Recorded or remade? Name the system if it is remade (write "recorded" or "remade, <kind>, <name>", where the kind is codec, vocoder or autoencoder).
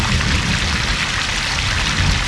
recorded